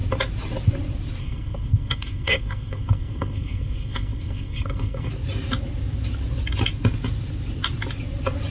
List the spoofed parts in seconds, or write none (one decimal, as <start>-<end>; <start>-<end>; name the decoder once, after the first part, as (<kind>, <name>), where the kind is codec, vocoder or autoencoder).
1.2-5.1 (codec, SNAC)